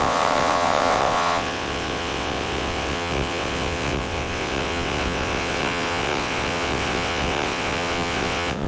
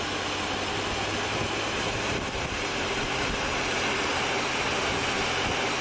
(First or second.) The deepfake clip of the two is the first